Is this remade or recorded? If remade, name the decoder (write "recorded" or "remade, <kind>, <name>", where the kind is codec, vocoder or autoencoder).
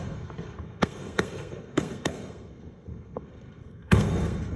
remade, codec, SNAC